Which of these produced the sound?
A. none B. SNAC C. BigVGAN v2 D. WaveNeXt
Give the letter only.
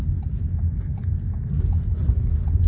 A